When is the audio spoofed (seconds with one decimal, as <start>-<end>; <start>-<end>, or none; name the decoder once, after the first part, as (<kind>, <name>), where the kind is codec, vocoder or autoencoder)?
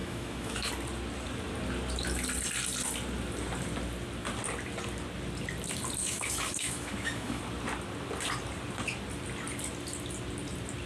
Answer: 0.0-0.7 (autoencoder, DAC-VAE); 6.0-7.4